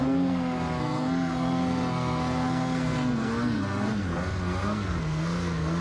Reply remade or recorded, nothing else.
remade